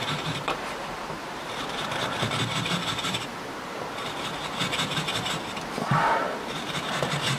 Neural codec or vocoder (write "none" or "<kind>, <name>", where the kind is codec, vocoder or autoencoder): vocoder, BigVGAN v2